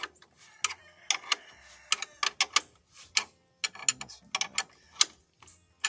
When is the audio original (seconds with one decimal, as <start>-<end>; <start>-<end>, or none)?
0.0-5.9